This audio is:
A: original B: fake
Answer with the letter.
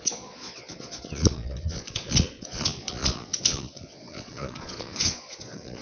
B